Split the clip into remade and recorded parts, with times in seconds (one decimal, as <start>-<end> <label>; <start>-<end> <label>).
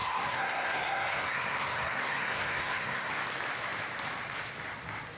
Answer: 0.0-3.1 remade; 3.1-5.2 recorded